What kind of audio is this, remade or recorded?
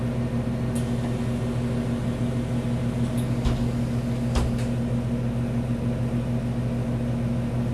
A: recorded